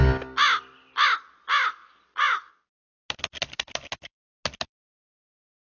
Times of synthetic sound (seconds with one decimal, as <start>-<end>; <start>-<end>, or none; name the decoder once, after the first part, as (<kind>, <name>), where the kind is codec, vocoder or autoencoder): 1.8-2.5 (vocoder, BigVGAN v2)